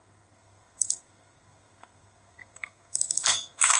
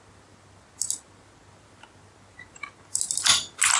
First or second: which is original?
second